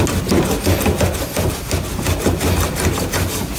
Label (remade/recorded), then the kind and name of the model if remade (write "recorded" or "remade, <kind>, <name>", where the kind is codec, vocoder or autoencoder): recorded